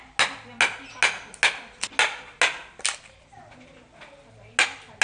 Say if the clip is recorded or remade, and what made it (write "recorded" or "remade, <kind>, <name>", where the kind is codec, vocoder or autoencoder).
recorded